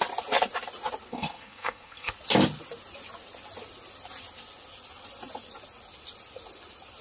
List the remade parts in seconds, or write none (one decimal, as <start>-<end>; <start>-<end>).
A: 1.1-2.1